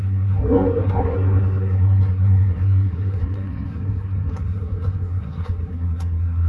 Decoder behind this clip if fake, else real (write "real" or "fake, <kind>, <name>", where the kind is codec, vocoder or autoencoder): fake, codec, SNAC